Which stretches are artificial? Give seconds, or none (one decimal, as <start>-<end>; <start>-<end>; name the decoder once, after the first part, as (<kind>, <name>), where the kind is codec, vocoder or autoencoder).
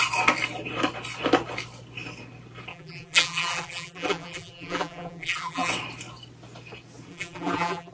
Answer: 2.7-5.7 (vocoder, BigVGAN v2); 7.1-7.9